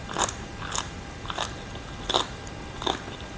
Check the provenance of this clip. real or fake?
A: real